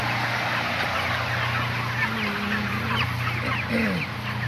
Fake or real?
real